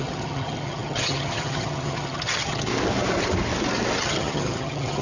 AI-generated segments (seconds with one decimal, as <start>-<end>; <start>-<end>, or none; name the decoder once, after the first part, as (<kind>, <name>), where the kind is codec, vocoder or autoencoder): 0.0-2.7 (vocoder, HiFi-GAN); 4.0-5.0

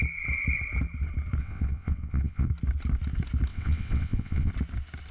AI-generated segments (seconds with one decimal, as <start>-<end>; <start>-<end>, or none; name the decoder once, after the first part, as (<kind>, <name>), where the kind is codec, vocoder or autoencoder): 1.4-2.5 (vocoder, WaveNeXt); 3.5-4.5

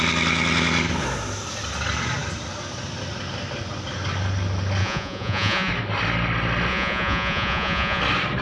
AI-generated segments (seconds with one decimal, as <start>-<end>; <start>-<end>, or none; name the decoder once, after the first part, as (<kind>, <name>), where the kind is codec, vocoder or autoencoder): 4.8-5.7 (vocoder, Vocos); 6.7-8.0

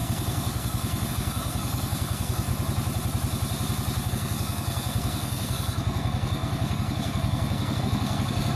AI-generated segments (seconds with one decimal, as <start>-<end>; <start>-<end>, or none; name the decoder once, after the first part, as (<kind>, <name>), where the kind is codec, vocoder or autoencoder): 0.0-2.5 (codec, SNAC); 4.1-8.6

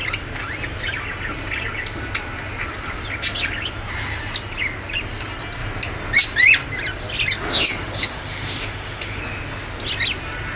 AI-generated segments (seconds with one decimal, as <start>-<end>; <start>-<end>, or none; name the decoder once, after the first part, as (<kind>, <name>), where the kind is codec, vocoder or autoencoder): 7.5-9.2 (autoencoder, DAC-VAE)

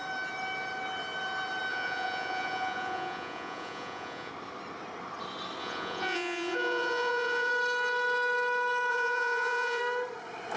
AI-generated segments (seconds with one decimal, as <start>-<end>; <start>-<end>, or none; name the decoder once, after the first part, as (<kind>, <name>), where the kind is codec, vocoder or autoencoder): 1.7-4.3 (vocoder, Vocos); 5.6-7.5; 8.9-9.8

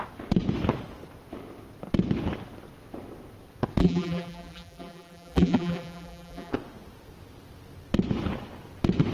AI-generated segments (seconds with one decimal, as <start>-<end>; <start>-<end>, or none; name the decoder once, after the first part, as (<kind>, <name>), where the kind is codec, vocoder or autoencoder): 3.8-6.5 (vocoder, BigVGAN v2)

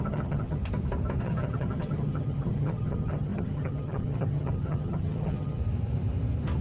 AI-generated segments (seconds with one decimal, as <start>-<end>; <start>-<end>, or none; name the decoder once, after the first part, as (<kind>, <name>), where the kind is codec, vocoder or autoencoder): 0.0-0.6 (vocoder, HiFi-GAN); 1.2-5.6